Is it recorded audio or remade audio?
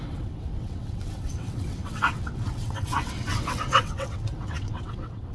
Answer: remade